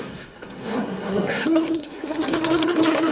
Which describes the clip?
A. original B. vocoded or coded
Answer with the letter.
B